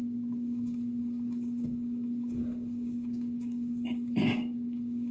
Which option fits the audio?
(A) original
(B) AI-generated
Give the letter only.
B